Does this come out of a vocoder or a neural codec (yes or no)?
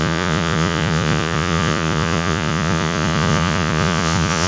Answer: yes